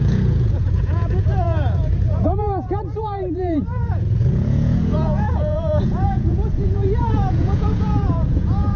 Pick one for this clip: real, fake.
fake